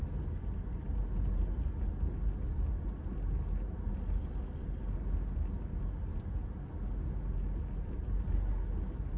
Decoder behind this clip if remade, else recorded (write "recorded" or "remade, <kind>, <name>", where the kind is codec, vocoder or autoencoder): recorded